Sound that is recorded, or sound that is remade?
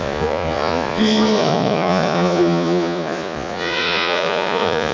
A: remade